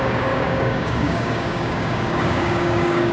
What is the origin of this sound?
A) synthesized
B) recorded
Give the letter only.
A